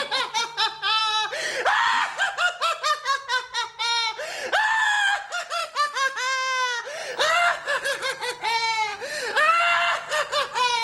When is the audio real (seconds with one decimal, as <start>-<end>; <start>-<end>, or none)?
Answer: 0.0-5.6; 6.8-8.9; 9.6-10.8